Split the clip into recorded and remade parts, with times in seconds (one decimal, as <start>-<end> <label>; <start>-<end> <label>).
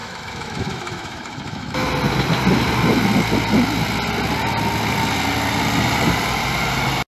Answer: 0.0-1.9 remade; 1.9-7.1 recorded